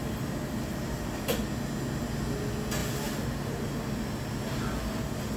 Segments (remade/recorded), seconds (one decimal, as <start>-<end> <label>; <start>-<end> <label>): 0.0-5.4 recorded